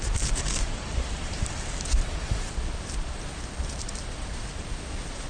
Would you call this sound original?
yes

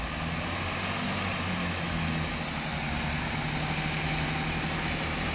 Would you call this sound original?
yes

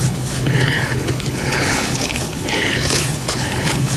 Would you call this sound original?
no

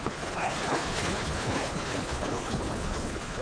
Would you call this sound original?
no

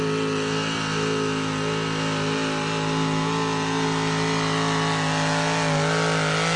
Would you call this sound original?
yes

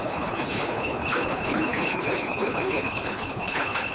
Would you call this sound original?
no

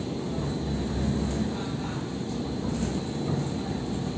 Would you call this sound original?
yes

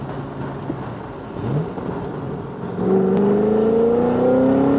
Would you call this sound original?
yes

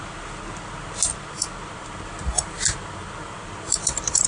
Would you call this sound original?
yes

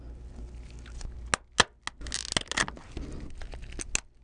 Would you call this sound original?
yes